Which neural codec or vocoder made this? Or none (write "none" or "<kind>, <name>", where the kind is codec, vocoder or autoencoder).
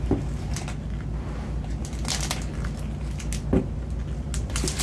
none